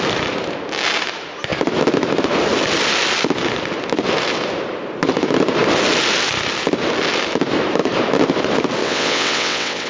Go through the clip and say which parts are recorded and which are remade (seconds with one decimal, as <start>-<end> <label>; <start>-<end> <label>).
0.0-8.8 recorded; 8.8-9.9 remade